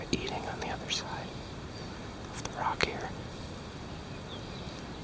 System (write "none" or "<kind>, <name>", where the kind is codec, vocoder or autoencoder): none